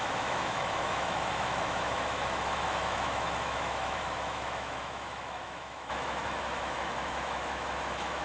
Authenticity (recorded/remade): remade